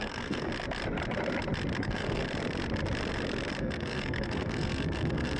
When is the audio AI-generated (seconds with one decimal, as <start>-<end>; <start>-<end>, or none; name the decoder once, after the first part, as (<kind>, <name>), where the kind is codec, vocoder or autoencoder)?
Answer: 0.0-0.5 (codec, SNAC); 1.8-2.2; 3.6-5.4